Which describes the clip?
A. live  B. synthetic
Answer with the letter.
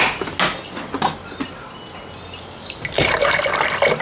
A